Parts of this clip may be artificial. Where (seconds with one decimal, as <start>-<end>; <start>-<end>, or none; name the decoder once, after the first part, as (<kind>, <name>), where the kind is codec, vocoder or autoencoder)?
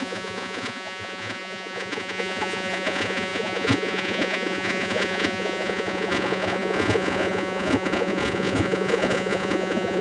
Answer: 0.0-10.0 (vocoder, Vocos)